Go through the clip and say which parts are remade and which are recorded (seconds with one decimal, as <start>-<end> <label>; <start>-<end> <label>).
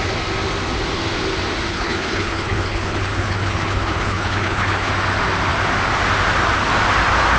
0.0-1.7 recorded; 1.7-4.9 remade; 4.9-7.4 recorded